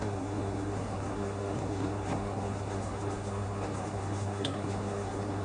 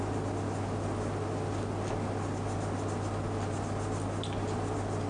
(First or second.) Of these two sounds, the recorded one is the second